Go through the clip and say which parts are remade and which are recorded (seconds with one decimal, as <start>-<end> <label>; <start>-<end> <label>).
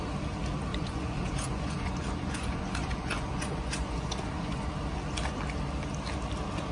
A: 0.0-0.7 recorded; 0.7-4.7 remade; 4.7-6.7 recorded